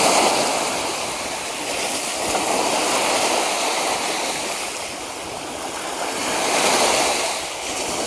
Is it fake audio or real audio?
real